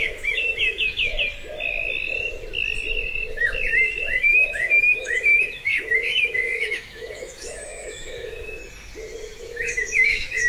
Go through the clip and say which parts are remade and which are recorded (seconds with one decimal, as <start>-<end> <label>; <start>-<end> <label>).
0.0-1.1 remade; 1.1-3.3 recorded; 3.3-8.6 remade; 8.6-9.2 recorded; 9.2-10.5 remade

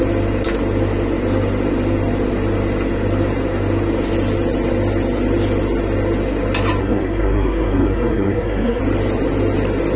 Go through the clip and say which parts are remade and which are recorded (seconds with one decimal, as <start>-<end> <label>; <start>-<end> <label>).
0.0-6.8 recorded; 6.8-8.8 remade; 8.8-10.0 recorded